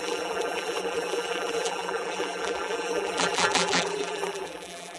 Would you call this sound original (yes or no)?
no